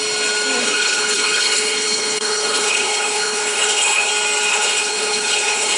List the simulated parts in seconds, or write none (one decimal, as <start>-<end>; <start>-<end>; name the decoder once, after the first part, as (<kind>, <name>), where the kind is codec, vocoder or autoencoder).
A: 0.6-4.1 (codec, HILCodec); 4.5-5.8

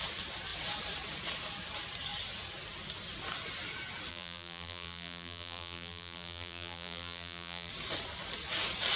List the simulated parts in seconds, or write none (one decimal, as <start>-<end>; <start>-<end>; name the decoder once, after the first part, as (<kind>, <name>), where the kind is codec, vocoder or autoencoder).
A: 4.1-7.7 (vocoder, BigVGAN v2)

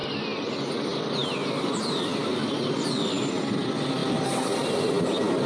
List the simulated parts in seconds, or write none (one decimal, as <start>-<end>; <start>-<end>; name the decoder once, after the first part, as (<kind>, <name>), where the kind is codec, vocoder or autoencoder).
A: none

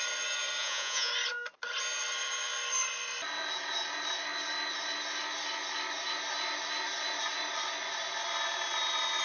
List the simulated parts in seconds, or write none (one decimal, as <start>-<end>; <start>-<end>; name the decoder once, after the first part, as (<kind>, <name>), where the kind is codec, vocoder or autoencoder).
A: 0.6-1.1 (vocoder, Vocos)

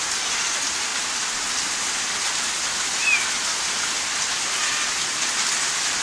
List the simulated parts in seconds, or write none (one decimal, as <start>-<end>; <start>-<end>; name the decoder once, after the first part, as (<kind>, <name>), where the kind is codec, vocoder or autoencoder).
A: none

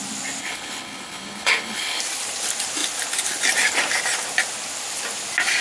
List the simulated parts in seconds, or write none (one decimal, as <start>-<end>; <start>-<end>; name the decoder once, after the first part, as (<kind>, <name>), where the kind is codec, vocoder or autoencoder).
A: 0.4-2.0 (codec, HILCodec)